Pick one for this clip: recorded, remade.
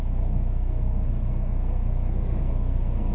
remade